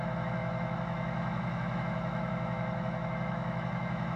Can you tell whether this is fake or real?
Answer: fake